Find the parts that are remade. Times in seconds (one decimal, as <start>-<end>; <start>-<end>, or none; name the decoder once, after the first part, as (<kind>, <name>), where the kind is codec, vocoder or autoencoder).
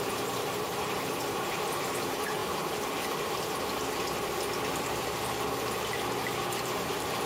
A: 0.0-2.4 (vocoder, BigVGAN v2); 6.6-7.3